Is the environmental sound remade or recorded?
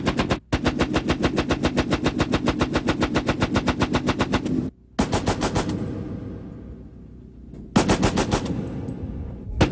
recorded